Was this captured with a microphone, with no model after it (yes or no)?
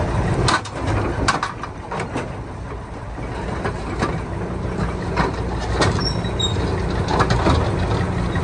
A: yes